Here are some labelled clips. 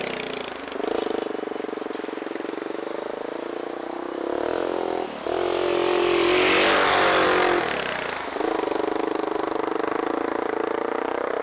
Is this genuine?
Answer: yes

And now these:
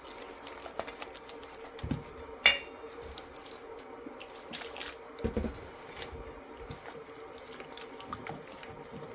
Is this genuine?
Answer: yes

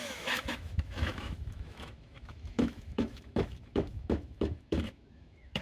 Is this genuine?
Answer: no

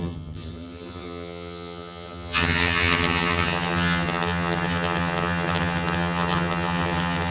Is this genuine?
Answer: no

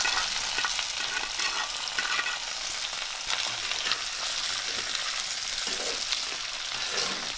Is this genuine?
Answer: yes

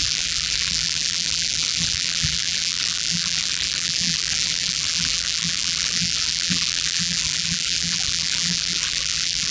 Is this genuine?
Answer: no